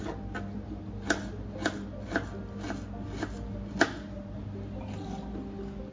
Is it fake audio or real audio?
real